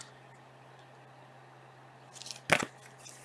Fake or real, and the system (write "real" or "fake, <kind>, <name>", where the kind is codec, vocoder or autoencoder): real